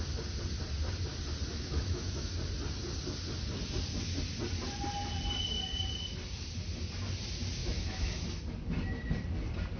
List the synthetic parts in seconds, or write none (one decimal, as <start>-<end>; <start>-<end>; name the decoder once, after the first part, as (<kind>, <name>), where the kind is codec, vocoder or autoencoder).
1.5-2.3 (autoencoder, DAC-VAE); 7.6-8.2